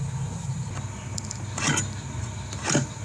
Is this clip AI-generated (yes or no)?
yes